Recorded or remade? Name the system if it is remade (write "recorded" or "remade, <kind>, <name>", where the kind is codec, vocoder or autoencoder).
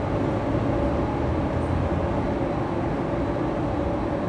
recorded